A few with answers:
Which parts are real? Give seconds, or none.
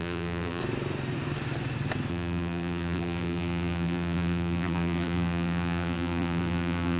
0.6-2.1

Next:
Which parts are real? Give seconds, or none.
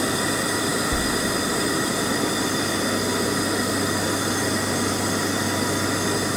0.0-6.4